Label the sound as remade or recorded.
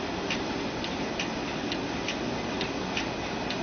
recorded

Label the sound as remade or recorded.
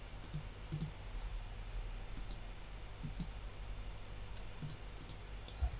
recorded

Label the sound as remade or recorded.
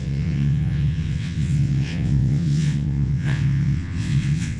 remade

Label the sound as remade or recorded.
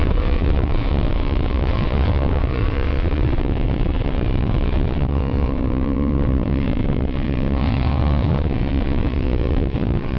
remade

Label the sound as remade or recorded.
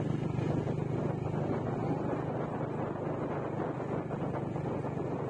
recorded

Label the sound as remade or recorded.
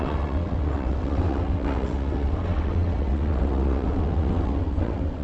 remade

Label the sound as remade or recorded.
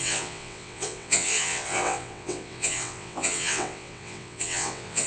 remade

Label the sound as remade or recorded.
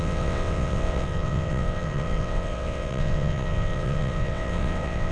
remade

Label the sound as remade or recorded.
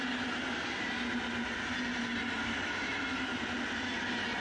recorded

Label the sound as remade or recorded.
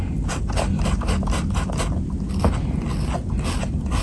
recorded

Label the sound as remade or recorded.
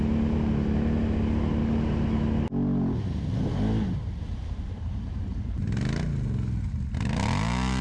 recorded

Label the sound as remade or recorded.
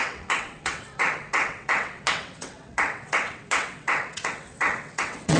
remade